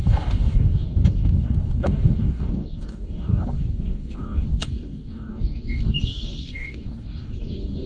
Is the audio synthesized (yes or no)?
yes